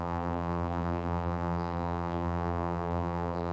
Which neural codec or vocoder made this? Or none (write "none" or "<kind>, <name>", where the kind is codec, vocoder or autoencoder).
vocoder, BigVGAN v2